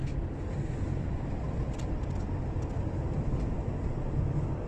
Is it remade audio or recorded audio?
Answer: recorded